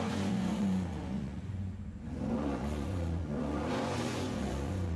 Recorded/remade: remade